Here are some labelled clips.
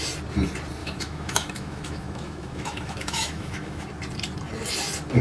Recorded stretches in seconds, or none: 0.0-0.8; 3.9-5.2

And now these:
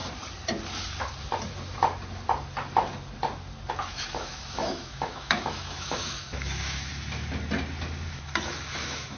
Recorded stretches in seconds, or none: 0.0-3.7; 6.9-8.1

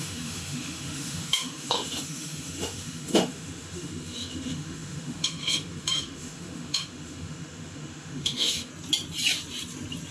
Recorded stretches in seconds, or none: 8.7-10.1

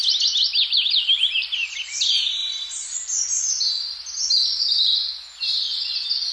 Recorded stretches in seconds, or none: 0.0-6.3

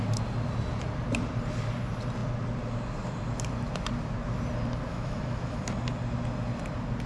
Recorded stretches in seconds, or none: 0.0-4.9; 5.6-7.1

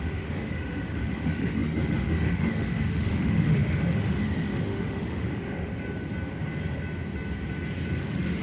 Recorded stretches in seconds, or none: 5.7-8.0